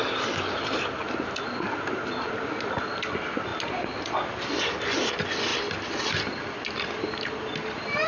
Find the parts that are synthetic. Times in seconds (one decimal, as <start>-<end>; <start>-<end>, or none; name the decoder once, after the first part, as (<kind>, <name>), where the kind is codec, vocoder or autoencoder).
none